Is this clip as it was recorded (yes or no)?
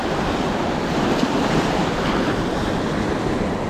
yes